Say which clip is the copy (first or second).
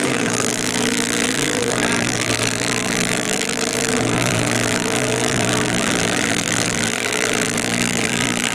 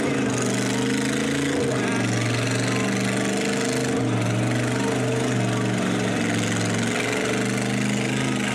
first